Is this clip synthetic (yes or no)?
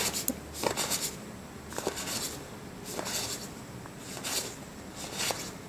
no